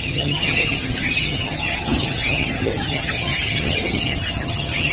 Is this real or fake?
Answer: fake